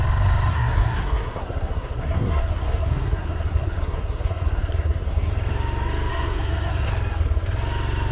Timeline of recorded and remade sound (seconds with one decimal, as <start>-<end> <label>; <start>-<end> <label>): 0.0-0.5 recorded; 0.5-5.3 remade; 5.3-6.1 recorded; 6.1-6.9 remade; 6.9-8.1 recorded